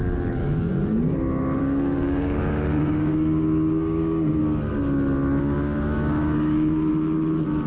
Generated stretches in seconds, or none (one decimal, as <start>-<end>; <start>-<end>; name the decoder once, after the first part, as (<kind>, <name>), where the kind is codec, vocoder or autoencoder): 0.0-0.7 (codec, DAC); 1.6-4.4; 5.4-6.9